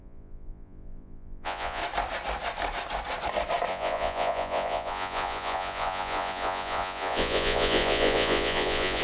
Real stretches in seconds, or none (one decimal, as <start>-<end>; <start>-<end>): 1.8-3.7